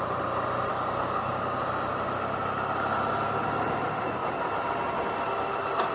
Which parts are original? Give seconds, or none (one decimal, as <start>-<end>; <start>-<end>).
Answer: 0.0-0.7; 1.6-5.9